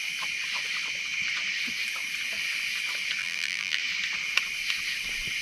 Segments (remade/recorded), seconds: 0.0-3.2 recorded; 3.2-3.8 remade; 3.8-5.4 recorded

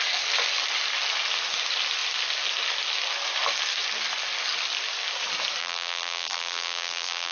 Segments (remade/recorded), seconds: 0.0-5.6 recorded; 5.6-7.3 remade

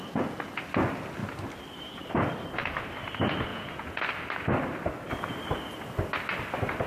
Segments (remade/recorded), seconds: 0.0-3.5 recorded; 3.5-4.0 remade; 4.0-6.9 recorded